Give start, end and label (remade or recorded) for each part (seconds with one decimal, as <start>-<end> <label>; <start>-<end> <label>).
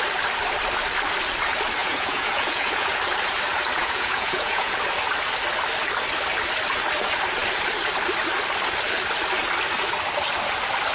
0.0-1.8 recorded; 1.8-3.0 remade; 3.0-3.8 recorded; 3.8-4.7 remade; 4.7-10.9 recorded